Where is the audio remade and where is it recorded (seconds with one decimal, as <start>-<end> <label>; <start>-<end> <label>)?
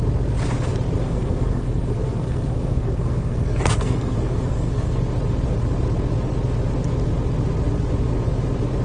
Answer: 0.0-1.0 recorded; 1.0-5.0 remade; 5.0-8.8 recorded